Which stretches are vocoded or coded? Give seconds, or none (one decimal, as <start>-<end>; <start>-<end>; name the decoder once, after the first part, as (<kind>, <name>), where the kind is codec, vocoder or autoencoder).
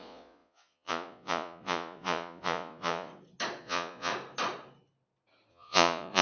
0.0-3.1 (vocoder, Vocos); 3.6-4.1; 5.5-6.2